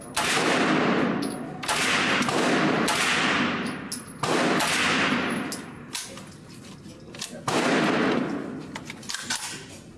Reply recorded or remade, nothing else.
recorded